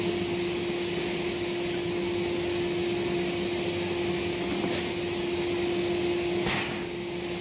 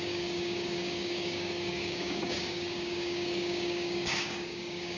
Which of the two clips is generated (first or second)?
second